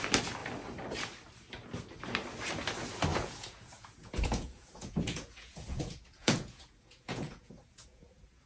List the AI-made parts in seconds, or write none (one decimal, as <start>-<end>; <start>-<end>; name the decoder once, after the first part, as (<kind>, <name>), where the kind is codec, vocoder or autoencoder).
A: 3.1-8.5 (vocoder, Vocos)